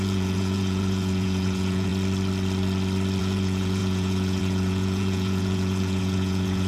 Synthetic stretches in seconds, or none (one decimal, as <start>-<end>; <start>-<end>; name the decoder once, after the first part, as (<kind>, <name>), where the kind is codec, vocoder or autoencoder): 0.0-1.9 (vocoder, Vocos); 3.2-6.7